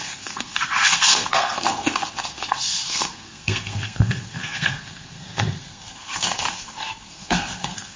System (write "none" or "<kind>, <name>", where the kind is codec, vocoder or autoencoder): codec, SNAC